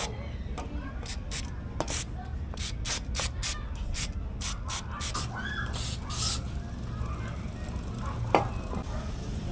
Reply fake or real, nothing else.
real